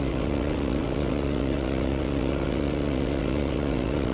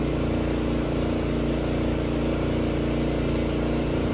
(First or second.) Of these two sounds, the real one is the second